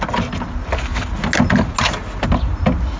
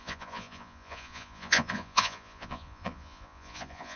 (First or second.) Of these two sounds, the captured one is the first